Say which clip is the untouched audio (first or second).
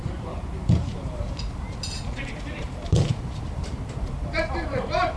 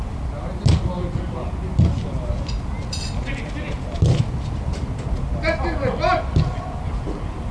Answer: second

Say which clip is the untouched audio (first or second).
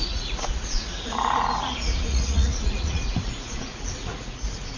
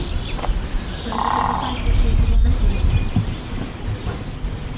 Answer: second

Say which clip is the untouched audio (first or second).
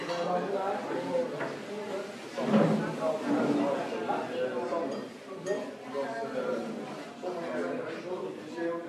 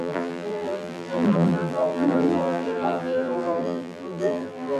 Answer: first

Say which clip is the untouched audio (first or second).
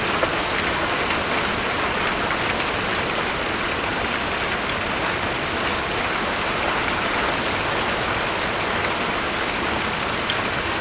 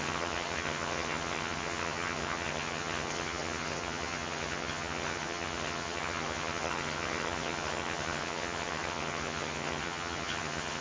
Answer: first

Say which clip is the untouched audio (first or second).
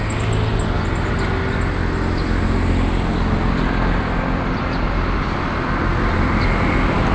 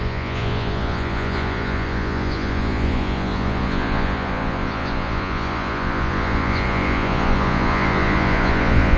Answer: first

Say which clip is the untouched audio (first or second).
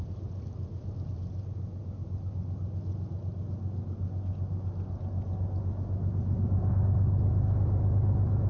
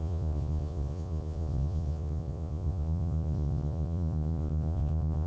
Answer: first